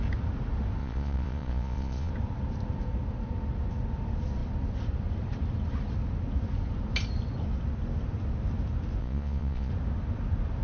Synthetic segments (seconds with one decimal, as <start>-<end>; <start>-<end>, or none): 0.8-2.1; 9.0-9.7